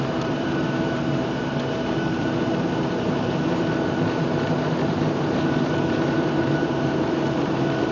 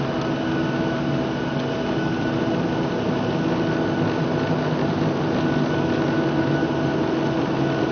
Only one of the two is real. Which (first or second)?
second